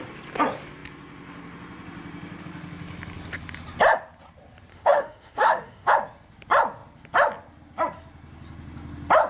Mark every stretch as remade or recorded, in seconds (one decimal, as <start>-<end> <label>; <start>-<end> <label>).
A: 0.0-4.7 recorded; 4.7-5.9 remade; 5.9-9.3 recorded